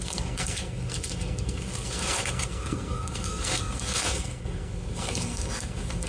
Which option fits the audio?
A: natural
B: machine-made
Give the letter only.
B